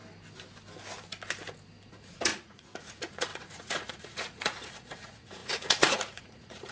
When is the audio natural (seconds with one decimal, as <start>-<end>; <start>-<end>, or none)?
0.0-1.9